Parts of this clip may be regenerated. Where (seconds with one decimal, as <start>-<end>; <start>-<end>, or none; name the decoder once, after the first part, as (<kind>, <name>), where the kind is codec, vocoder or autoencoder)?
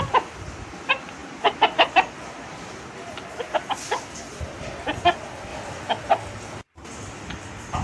none